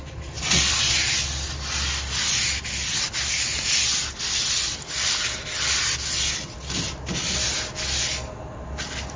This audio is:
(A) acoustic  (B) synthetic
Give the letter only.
A